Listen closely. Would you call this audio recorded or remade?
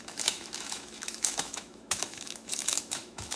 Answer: remade